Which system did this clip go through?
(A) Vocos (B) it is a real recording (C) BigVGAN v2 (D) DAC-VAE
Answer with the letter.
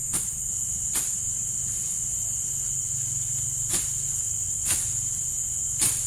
B